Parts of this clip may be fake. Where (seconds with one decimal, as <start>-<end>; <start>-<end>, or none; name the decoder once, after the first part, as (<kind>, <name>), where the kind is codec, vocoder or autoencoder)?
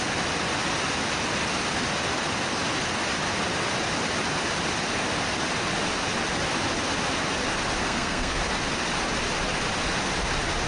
7.8-8.4 (codec, SNAC)